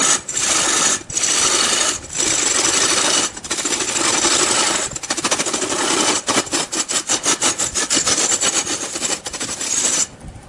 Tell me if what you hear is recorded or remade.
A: recorded